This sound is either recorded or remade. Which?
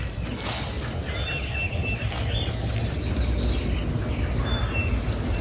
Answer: recorded